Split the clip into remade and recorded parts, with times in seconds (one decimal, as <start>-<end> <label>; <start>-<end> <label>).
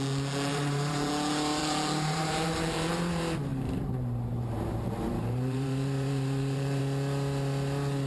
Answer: 0.0-0.5 recorded; 0.5-1.1 remade; 1.1-1.6 recorded; 1.6-2.9 remade; 2.9-3.5 recorded; 3.5-6.8 remade; 6.8-8.1 recorded